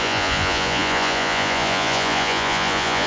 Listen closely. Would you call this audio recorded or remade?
remade